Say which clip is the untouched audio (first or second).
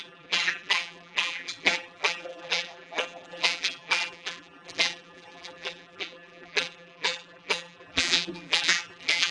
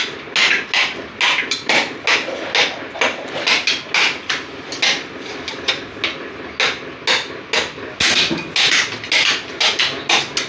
second